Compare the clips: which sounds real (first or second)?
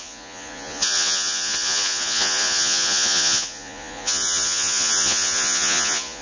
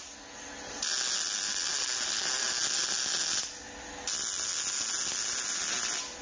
second